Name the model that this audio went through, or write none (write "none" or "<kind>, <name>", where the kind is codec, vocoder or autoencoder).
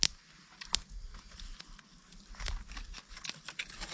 none